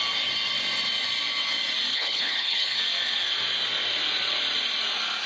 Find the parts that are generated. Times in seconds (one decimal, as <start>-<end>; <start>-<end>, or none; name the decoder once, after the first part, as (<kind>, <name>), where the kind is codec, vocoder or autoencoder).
1.9-2.8 (codec, HILCodec)